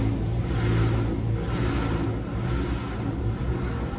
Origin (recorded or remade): recorded